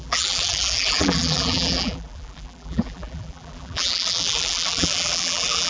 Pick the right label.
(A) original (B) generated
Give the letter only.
B